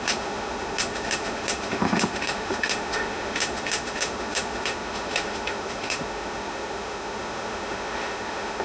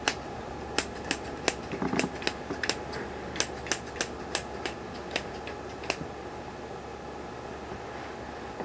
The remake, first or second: first